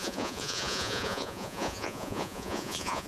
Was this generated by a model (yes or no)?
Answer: yes